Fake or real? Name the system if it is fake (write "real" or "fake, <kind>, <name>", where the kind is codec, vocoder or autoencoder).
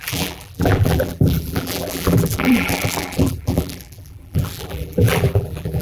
fake, vocoder, BigVGAN v2